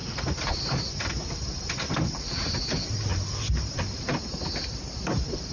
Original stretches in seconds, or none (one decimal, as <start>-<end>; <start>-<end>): 0.0-5.5